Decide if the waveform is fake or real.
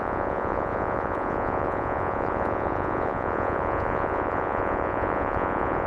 fake